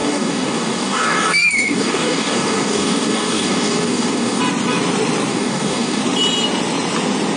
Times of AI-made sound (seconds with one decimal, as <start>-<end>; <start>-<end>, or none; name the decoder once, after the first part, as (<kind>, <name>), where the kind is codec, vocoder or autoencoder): 0.0-4.4 (codec, DAC); 5.3-6.0